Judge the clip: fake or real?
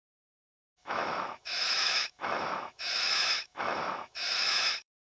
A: fake